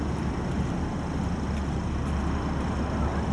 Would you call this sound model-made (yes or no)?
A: no